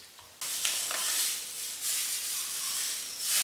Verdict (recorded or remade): recorded